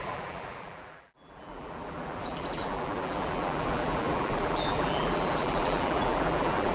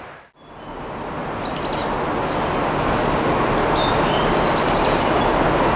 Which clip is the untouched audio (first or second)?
second